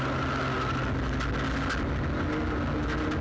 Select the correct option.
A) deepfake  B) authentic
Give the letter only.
B